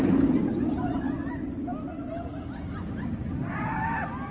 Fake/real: real